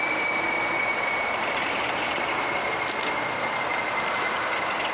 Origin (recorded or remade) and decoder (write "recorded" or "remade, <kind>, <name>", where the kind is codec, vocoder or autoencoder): recorded